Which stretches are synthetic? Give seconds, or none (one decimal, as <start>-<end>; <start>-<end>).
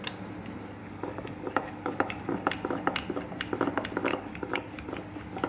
0.8-2.5; 4.1-4.9